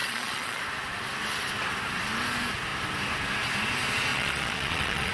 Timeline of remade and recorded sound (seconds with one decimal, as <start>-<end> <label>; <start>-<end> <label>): 0.0-0.6 remade; 0.6-4.1 recorded; 4.1-5.1 remade